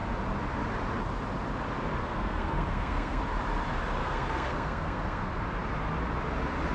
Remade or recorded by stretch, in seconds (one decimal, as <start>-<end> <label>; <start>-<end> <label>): 0.0-2.0 recorded; 2.0-3.2 remade; 3.2-4.0 recorded; 4.0-5.4 remade; 5.4-6.7 recorded